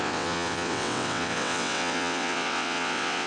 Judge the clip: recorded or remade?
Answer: remade